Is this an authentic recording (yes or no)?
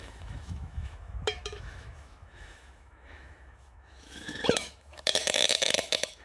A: no